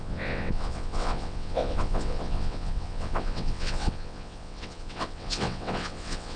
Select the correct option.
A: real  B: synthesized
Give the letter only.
B